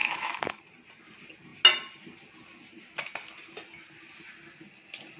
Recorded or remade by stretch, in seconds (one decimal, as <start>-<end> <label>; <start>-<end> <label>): 0.0-0.6 remade; 0.6-5.2 recorded